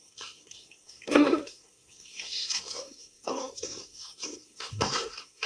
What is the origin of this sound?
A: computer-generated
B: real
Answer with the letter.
A